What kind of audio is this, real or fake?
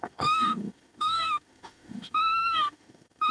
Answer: fake